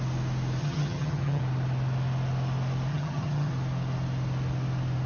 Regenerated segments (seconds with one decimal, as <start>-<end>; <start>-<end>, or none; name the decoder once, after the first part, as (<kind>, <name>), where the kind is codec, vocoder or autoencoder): 0.6-1.4 (vocoder, HiFi-GAN); 2.9-3.5